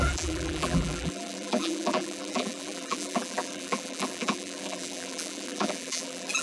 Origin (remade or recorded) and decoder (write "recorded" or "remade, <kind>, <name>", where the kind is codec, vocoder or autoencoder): remade, vocoder, BigVGAN v2